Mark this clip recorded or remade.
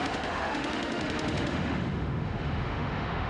remade